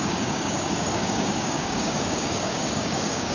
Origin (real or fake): fake